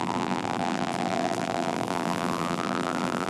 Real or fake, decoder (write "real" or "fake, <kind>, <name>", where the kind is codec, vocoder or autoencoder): fake, vocoder, BigVGAN v2